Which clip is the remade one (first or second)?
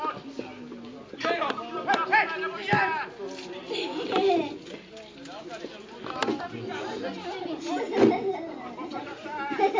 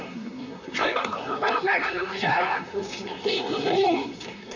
second